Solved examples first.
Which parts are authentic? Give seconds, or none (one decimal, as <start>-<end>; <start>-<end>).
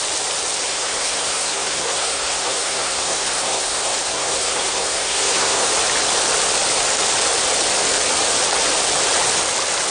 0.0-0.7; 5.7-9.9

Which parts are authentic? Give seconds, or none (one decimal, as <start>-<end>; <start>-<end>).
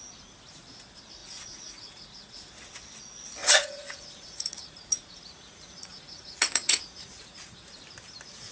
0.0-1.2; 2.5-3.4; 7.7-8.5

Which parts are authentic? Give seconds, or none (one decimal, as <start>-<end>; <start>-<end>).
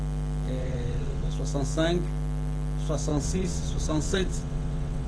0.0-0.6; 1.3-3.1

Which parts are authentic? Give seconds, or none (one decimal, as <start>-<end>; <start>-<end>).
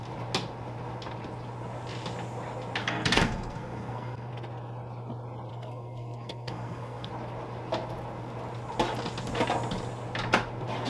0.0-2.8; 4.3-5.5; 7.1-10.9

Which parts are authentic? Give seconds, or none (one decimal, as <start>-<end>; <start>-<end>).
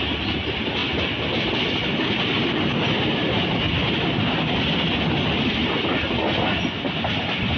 0.0-7.6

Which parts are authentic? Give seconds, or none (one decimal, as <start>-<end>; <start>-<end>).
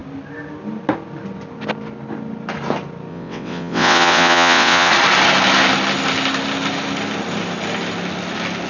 0.0-3.1; 4.9-8.7